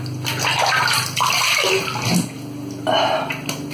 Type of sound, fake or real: real